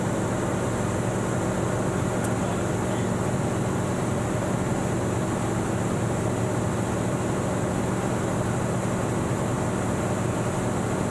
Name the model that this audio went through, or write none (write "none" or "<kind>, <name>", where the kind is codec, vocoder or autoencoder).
none